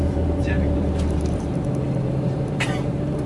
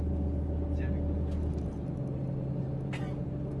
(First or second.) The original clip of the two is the second